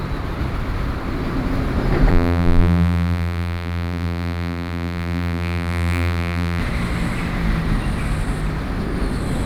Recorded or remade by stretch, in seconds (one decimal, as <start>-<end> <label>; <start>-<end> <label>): 0.0-2.1 recorded; 2.1-6.6 remade; 6.6-9.5 recorded